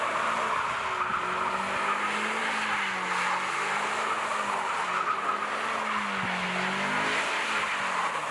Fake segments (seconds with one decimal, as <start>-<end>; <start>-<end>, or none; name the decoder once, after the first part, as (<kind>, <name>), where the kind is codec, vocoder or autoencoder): none